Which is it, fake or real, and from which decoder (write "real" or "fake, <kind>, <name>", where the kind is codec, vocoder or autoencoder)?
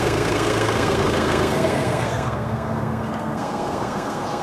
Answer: fake, codec, SNAC